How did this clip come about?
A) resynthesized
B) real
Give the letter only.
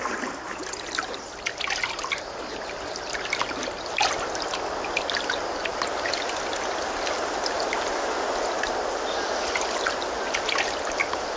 B